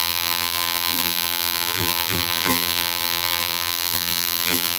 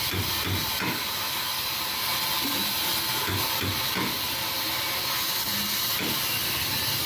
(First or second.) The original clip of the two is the second